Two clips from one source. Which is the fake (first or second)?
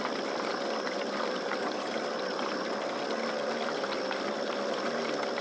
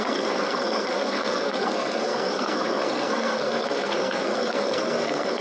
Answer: second